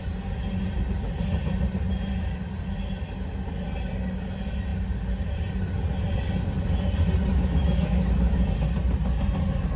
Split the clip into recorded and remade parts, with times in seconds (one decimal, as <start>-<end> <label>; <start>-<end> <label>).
0.0-7.3 recorded; 7.3-8.4 remade; 8.4-9.8 recorded